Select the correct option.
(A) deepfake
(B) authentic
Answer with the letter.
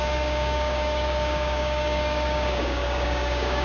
A